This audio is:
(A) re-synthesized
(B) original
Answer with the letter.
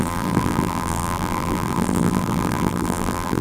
A